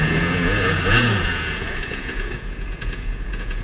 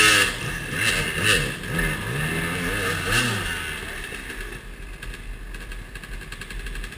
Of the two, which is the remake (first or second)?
first